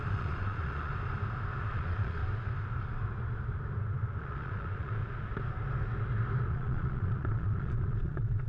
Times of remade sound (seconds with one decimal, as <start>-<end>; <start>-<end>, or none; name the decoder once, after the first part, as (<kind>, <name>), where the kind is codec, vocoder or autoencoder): 0.0-0.9 (vocoder, Vocos); 1.7-2.2; 4.2-5.0; 6.5-8.5

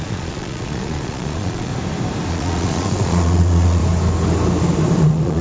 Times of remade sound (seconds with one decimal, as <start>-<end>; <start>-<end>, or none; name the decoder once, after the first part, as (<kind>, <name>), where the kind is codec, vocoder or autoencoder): 0.0-1.7 (vocoder, Vocos); 2.3-3.8; 5.0-5.4

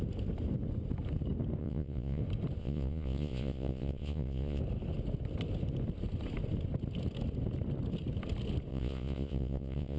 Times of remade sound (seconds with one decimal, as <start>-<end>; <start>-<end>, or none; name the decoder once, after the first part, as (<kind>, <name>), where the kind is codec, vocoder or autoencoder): 1.6-2.2 (vocoder, Vocos); 2.6-4.6; 8.7-10.0